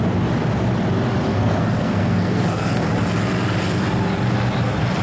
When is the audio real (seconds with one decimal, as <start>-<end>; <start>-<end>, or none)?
0.0-1.3; 2.9-5.0